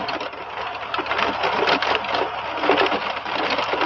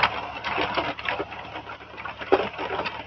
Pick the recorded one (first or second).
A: first